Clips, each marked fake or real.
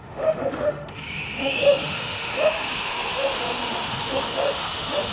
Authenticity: fake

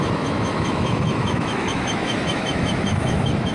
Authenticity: fake